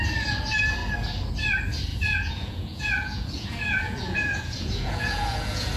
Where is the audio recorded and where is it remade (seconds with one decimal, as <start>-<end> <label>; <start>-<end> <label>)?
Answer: 0.0-1.9 recorded; 1.9-5.8 remade